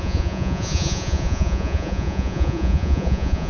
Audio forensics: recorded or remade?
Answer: remade